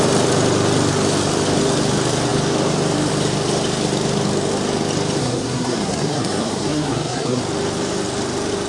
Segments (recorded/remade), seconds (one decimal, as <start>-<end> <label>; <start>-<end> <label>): 0.0-5.2 recorded; 5.2-7.4 remade; 7.4-8.7 recorded